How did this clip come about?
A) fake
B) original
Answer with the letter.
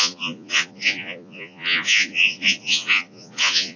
A